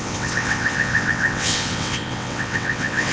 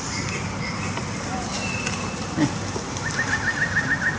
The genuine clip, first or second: second